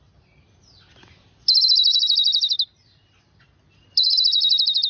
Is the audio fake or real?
real